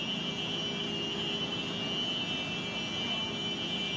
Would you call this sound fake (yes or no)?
no